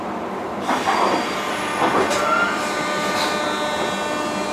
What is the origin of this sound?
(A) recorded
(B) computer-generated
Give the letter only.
A